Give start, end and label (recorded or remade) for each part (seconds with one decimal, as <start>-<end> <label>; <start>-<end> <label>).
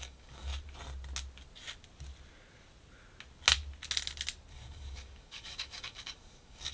0.0-0.5 remade; 0.5-4.5 recorded; 4.5-6.7 remade